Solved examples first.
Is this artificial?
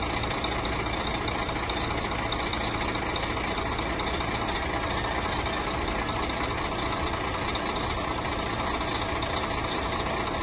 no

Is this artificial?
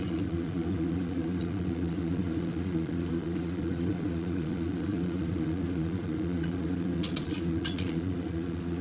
yes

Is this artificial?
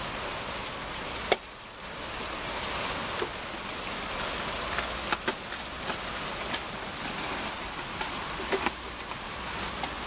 no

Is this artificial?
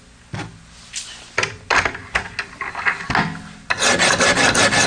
no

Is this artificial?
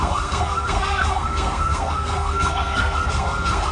yes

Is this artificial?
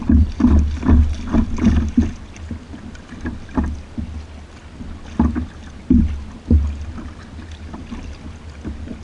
no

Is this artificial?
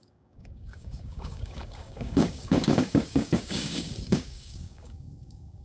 yes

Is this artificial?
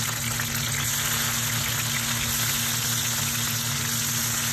no